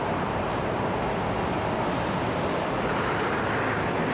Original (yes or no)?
yes